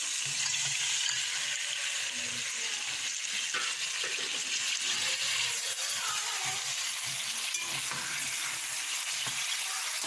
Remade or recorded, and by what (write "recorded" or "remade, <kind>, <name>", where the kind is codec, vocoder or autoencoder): recorded